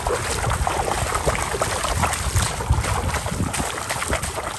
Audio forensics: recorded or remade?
recorded